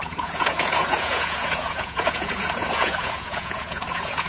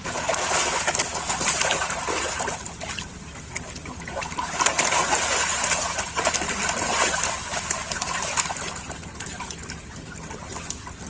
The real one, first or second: second